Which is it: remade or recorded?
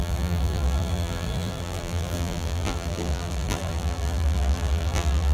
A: remade